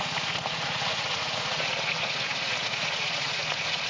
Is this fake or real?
fake